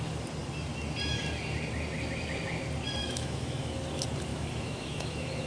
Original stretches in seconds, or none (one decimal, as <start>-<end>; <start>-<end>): 0.0-3.0; 3.8-4.3